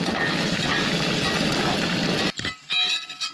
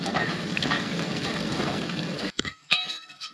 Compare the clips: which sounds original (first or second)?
first